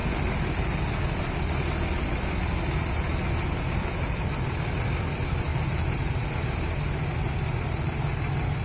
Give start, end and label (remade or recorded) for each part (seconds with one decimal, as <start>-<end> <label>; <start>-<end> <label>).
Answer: 0.0-5.5 recorded; 5.5-6.1 remade; 6.1-8.6 recorded